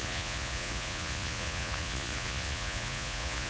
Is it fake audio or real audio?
fake